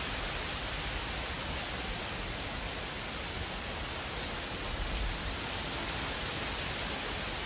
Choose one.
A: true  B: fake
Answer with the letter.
A